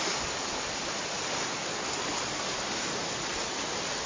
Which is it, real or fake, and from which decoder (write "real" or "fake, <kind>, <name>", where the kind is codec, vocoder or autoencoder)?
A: real